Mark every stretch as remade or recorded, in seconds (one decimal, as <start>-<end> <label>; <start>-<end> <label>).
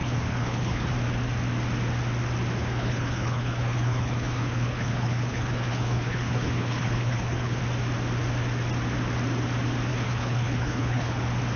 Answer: 0.0-0.9 remade; 0.9-2.6 recorded; 2.6-7.6 remade; 7.6-9.9 recorded; 9.9-11.2 remade; 11.2-11.6 recorded